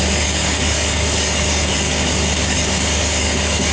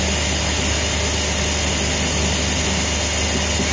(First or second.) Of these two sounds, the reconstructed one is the first